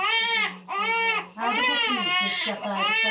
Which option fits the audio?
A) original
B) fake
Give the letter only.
A